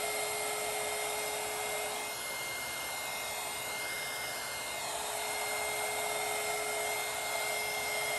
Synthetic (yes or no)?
no